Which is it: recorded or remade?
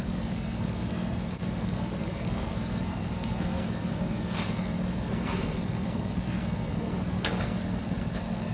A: remade